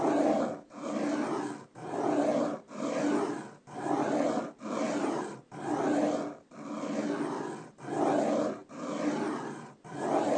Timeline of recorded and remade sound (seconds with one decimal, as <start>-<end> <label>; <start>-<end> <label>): 0.0-10.4 recorded